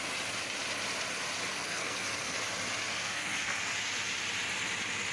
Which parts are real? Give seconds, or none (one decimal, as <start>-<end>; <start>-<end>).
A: 0.0-1.4; 2.4-2.9; 3.6-5.1